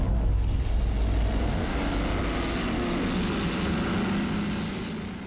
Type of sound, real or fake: real